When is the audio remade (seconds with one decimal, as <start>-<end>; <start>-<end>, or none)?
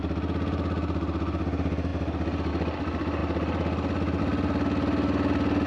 none